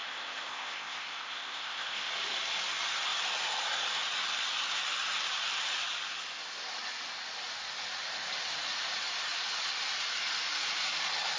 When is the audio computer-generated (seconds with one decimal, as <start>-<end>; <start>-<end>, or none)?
0.0-2.1

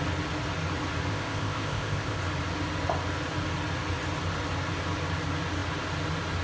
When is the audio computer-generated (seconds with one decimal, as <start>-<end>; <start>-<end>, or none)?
1.1-2.2

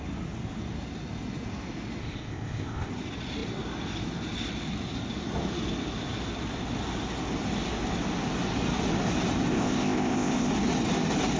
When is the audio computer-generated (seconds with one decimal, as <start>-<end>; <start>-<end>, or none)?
2.0-2.9; 9.5-10.5

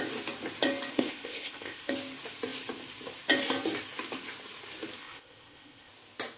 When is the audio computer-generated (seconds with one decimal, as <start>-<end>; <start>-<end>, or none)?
0.9-1.9; 5.0-5.9

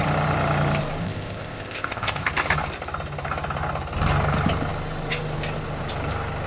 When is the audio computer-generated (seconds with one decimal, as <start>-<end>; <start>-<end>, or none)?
1.0-2.3

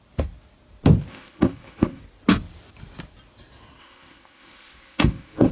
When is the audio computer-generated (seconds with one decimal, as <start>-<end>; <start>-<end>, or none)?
1.1-2.0; 3.8-5.5

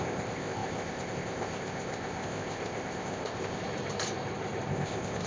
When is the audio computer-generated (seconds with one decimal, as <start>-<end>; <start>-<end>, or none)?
0.0-3.6; 4.7-5.3